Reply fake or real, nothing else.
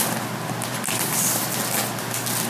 real